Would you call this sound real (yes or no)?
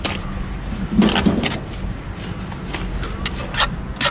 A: yes